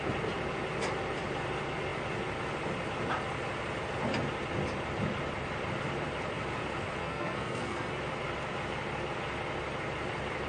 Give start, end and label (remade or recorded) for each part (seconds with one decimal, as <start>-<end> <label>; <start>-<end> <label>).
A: 0.0-7.0 recorded; 7.0-8.0 remade; 8.0-10.5 recorded